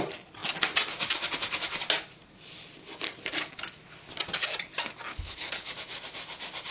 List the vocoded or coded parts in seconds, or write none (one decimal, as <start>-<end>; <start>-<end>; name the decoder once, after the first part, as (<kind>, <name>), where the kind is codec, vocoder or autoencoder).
5.1-5.7 (codec, HILCodec)